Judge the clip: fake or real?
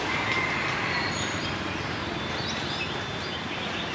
real